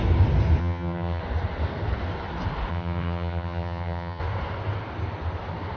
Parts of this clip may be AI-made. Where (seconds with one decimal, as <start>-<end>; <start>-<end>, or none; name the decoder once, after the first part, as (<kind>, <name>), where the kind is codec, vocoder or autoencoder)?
0.6-1.2 (vocoder, HiFi-GAN); 2.7-4.2

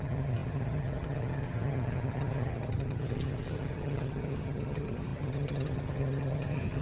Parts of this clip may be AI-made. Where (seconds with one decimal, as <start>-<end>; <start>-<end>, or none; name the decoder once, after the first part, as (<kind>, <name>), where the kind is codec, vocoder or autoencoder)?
0.0-6.8 (vocoder, HiFi-GAN)

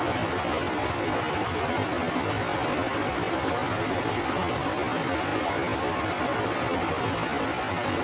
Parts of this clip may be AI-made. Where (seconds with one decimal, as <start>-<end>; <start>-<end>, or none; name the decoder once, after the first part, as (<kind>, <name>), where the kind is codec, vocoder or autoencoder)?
none